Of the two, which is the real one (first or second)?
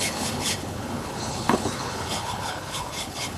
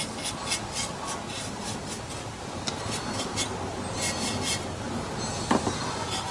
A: second